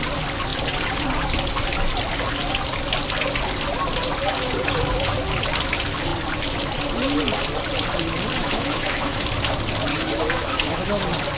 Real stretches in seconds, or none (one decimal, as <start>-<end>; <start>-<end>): 0.0-8.4; 9.2-9.9; 11.0-11.4